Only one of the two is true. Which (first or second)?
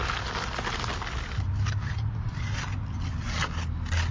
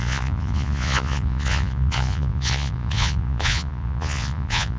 first